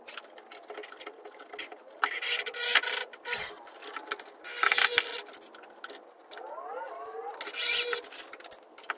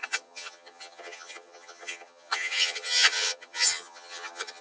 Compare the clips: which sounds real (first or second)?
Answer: first